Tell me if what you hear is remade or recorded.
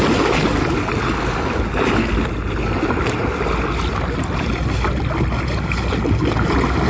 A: recorded